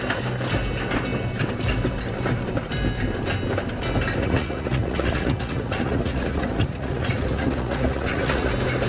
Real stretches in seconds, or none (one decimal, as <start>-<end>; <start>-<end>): 0.0-4.2; 8.5-8.9